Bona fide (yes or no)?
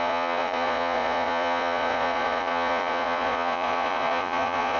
no